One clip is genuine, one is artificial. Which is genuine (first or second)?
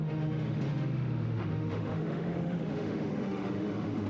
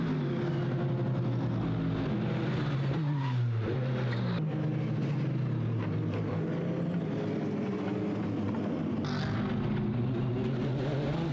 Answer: second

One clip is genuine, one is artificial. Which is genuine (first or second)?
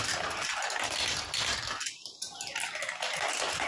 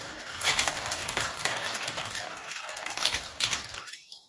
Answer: first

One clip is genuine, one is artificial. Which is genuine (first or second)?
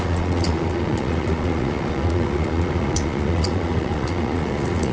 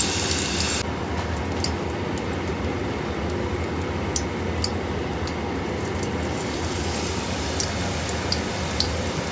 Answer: second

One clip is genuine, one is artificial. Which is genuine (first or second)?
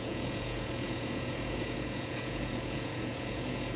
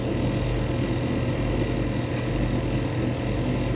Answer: second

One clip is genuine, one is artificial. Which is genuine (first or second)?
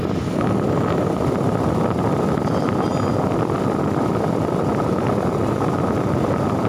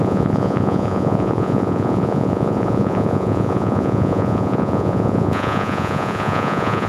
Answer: first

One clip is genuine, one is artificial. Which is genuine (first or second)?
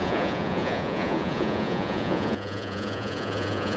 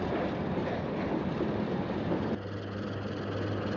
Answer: second